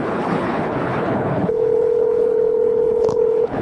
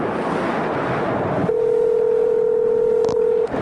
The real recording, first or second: second